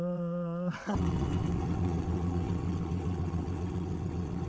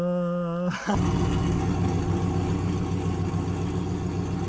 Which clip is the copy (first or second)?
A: first